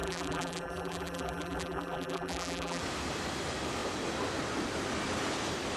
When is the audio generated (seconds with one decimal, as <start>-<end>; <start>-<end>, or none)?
0.0-2.8